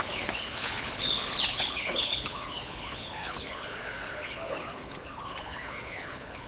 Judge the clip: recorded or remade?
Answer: remade